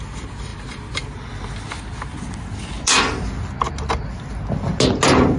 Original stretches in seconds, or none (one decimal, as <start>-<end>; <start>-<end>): 0.0-5.4